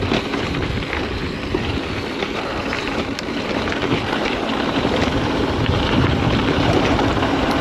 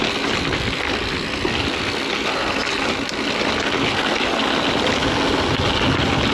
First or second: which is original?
second